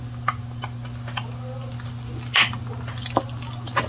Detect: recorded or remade recorded